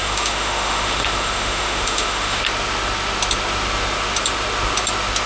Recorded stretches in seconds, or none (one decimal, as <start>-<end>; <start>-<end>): 2.4-5.3